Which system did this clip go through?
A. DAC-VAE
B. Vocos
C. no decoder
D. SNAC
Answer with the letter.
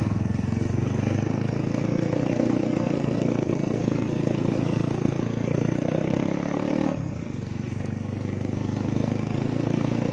D